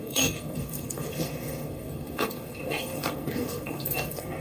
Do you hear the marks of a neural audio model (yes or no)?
yes